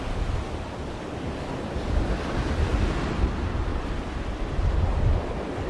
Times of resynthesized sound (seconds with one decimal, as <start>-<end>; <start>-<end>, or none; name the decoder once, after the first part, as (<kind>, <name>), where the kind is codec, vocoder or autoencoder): 2.7-3.3 (vocoder, BigVGAN v2)